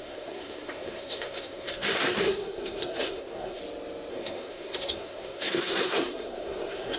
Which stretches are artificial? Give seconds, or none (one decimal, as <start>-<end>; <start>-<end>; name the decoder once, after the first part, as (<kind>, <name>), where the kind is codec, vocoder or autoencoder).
0.0-3.6 (codec, SNAC); 4.1-7.0